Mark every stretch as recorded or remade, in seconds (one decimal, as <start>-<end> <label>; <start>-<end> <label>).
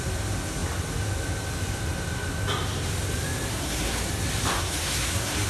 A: 0.0-3.5 recorded; 3.5-4.1 remade; 4.1-4.5 recorded; 4.5-5.5 remade